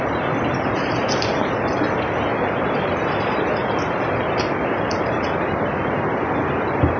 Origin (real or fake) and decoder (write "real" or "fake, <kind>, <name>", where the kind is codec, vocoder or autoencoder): real